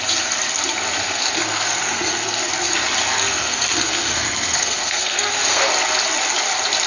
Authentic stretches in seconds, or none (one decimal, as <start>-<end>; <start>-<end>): 0.0-1.0; 2.5-3.2; 5.7-6.9

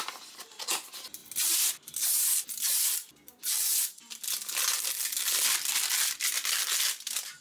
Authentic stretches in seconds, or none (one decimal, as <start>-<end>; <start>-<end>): 0.0-7.4

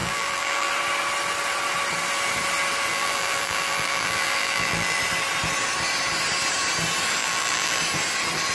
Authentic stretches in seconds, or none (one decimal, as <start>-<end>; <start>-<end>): 0.7-2.9; 5.0-7.2; 7.8-8.5